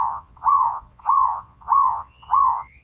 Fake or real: fake